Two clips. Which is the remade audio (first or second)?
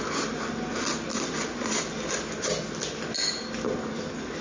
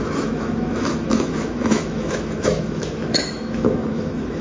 second